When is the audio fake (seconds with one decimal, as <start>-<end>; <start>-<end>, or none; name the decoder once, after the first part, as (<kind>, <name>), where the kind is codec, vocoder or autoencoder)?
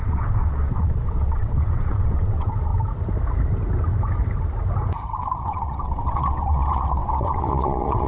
0.0-2.7 (vocoder, WaveNeXt); 5.4-8.1